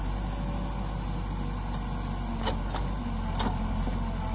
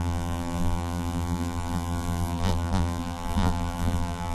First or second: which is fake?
second